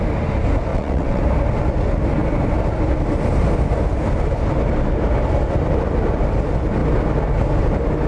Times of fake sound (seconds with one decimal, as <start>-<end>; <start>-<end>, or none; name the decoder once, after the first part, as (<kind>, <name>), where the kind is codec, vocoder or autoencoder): 0.7-1.2 (vocoder, WaveNeXt)